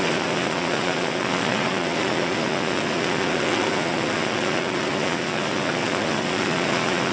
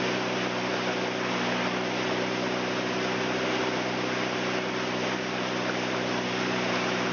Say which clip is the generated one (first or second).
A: first